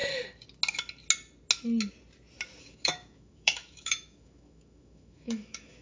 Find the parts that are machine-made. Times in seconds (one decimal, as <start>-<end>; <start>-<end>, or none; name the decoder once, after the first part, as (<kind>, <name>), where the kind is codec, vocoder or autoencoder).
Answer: 2.6-5.8 (autoencoder, DAC-VAE)